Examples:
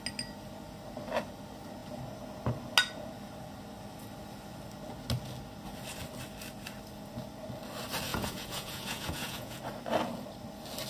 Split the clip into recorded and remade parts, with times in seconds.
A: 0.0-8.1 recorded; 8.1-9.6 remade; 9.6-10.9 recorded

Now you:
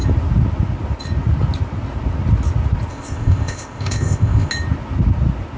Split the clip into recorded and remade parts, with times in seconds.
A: 0.0-2.9 recorded; 2.9-4.5 remade; 4.5-5.6 recorded

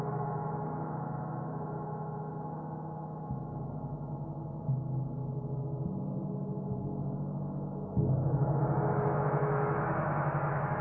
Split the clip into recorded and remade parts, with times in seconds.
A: 0.0-5.2 remade; 5.2-6.3 recorded; 6.3-10.8 remade

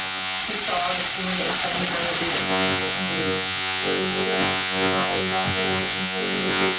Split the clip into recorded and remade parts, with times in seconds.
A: 0.0-0.4 remade; 0.4-2.4 recorded; 2.4-6.8 remade

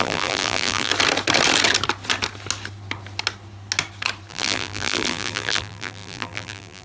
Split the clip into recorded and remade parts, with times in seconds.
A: 0.0-0.9 remade; 0.9-4.3 recorded; 4.3-6.8 remade

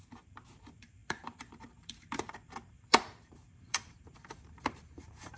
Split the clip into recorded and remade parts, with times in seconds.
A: 0.0-5.4 remade